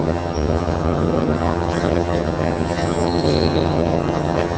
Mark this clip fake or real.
fake